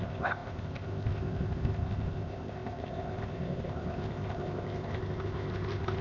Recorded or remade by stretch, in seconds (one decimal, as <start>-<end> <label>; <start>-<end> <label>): 0.0-6.0 remade